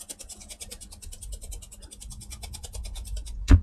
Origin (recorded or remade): remade